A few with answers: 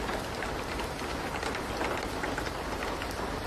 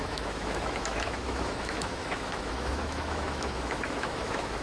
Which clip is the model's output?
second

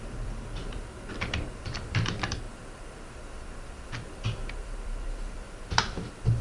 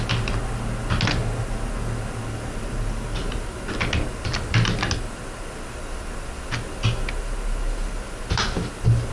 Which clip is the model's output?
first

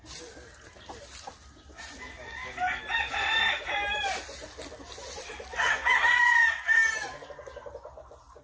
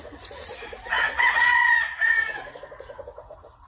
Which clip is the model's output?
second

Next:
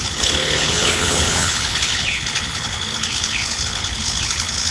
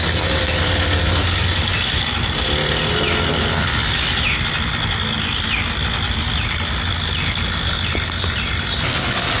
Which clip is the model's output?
first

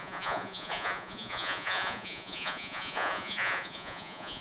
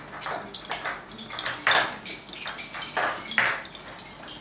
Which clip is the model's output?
first